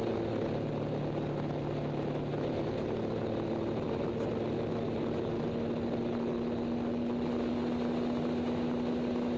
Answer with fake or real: real